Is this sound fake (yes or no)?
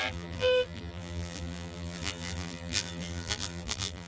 yes